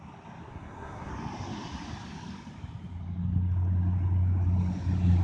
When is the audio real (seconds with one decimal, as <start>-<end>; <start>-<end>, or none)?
0.0-0.5; 1.1-5.2